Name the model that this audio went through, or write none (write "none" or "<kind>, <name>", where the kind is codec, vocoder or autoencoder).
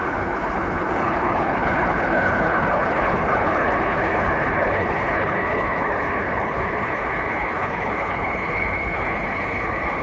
codec, HILCodec